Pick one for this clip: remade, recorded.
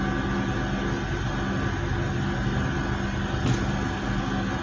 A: recorded